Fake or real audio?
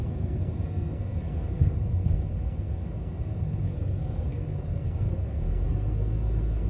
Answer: fake